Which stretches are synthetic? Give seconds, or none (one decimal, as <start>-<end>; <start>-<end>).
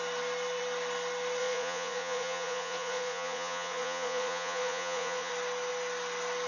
1.4-5.3